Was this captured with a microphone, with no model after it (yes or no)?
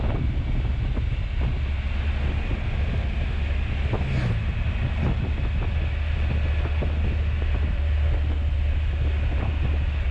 yes